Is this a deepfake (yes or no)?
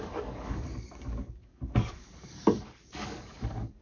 yes